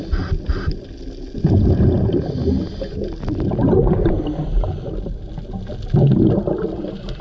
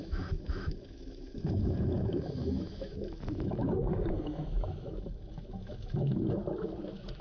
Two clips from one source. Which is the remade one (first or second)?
second